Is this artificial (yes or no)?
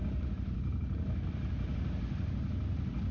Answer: no